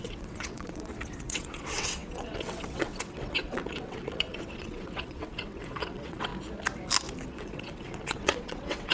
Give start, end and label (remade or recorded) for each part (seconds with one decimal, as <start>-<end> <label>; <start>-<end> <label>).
0.0-6.3 remade; 6.3-7.3 recorded; 7.3-8.9 remade